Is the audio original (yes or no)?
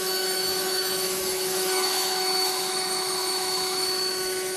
no